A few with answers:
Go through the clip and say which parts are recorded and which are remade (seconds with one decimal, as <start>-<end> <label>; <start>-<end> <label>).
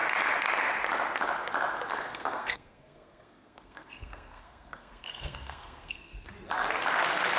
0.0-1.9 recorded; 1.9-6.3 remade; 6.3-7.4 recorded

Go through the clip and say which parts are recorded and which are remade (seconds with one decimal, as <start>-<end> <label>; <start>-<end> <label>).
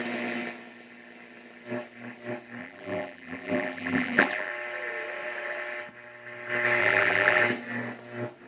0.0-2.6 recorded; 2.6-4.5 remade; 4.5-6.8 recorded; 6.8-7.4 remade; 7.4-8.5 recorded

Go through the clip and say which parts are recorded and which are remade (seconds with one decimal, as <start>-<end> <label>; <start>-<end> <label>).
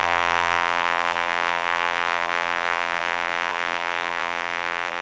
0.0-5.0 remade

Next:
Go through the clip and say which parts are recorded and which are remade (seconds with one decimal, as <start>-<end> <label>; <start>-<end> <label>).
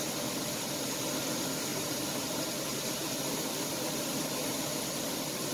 0.0-1.7 recorded; 1.7-2.4 remade; 2.4-3.0 recorded; 3.0-4.5 remade; 4.5-5.5 recorded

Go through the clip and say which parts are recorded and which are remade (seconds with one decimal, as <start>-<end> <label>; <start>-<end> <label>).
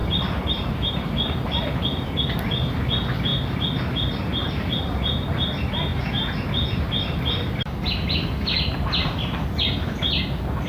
0.0-10.7 recorded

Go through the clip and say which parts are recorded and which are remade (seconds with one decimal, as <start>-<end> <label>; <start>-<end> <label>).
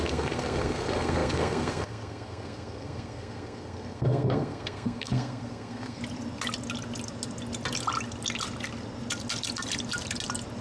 0.0-6.0 remade; 6.0-10.6 recorded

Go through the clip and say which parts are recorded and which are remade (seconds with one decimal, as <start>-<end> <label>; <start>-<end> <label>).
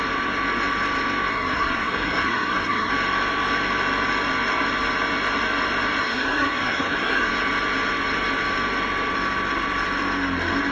0.0-1.3 recorded; 1.3-2.9 remade; 2.9-6.0 recorded; 6.0-7.3 remade; 7.3-10.7 recorded